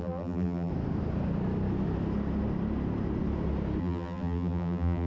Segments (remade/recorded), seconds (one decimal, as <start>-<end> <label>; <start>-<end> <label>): 0.0-0.7 remade; 0.7-3.8 recorded; 3.8-5.1 remade